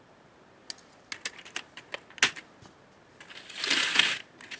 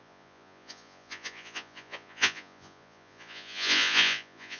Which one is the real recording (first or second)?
first